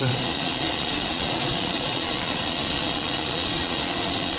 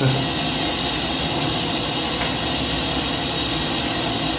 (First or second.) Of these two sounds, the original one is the second